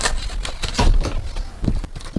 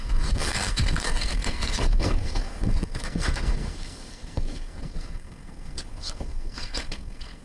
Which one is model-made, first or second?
second